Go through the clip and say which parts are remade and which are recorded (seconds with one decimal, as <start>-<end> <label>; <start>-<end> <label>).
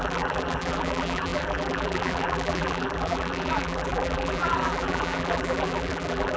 0.0-6.4 remade